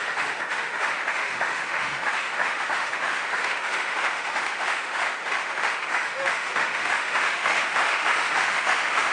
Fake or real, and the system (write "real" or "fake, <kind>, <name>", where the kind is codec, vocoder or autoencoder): fake, autoencoder, DAC-VAE